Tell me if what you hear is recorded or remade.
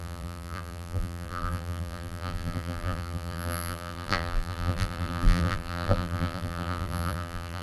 remade